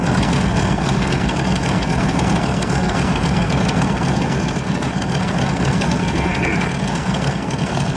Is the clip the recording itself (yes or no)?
no